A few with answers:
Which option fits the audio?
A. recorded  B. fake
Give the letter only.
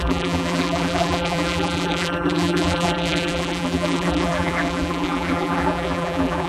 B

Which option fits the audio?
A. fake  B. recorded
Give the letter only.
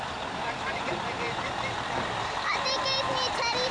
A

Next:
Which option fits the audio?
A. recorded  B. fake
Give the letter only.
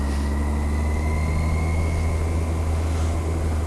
A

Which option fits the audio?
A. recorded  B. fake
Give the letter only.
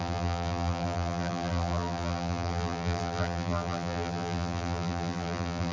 B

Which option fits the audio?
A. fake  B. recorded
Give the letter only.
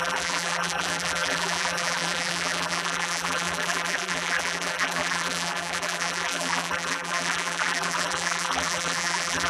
A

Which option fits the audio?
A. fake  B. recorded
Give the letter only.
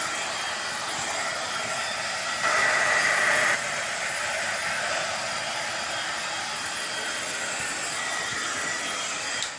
A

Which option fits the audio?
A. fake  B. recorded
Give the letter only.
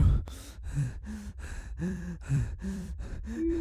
A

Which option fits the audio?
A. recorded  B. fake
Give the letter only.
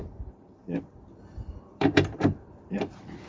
B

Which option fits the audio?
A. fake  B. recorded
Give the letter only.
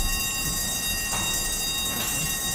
B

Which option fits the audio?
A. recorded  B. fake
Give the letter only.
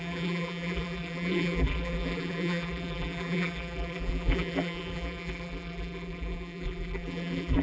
B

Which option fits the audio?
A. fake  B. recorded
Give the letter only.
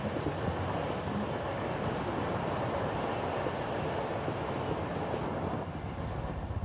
B